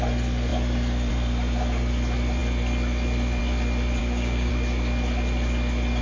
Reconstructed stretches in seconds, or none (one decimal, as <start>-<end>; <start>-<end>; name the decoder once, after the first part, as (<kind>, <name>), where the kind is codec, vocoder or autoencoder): 4.0-4.5 (codec, DAC)

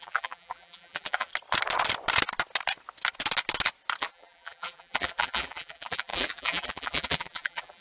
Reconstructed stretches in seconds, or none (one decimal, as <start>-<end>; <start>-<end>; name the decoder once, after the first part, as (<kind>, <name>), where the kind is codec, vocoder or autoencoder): 0.0-1.3 (vocoder, BigVGAN v2); 4.0-7.8

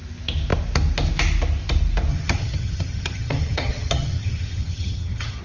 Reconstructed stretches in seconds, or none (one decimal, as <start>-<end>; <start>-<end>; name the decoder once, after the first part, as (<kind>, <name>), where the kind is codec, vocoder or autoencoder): 2.1-5.4 (vocoder, HiFi-GAN)

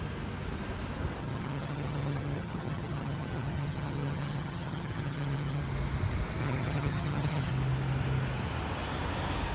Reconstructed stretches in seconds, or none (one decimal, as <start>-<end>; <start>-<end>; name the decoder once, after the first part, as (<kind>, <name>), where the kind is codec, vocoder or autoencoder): 1.2-5.6 (vocoder, HiFi-GAN); 6.4-7.5

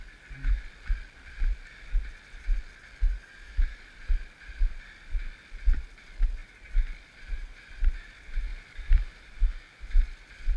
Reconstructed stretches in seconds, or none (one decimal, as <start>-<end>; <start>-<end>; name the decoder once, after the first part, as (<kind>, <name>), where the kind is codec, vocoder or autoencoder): 6.4-7.8 (vocoder, BigVGAN v2); 8.5-9.2

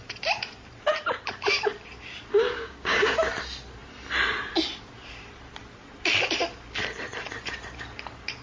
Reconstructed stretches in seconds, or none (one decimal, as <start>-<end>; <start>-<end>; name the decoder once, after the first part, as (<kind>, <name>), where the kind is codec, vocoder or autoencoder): 2.4-3.3 (codec, DAC)